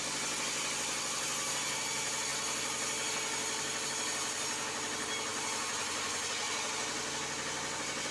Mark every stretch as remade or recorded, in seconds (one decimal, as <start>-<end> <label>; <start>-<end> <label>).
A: 0.0-8.1 recorded